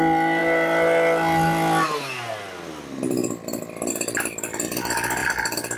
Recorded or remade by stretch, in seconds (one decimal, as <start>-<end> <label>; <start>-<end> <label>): 0.0-5.8 recorded